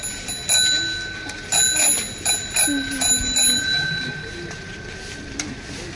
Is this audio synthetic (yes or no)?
no